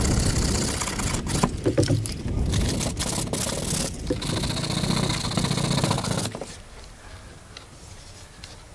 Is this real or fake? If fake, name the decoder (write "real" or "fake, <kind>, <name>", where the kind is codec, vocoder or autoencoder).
real